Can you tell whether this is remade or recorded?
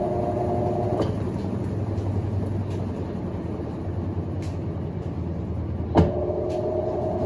recorded